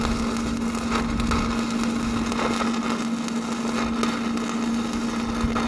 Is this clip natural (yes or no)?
yes